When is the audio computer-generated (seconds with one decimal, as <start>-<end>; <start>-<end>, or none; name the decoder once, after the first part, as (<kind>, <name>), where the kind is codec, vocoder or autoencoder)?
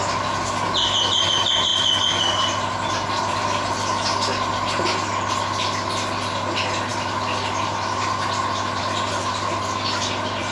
none